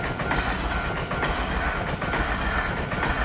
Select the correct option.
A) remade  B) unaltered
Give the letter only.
B